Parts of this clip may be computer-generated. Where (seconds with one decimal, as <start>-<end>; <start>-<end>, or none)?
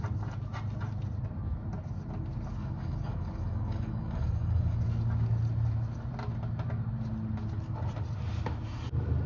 2.6-4.8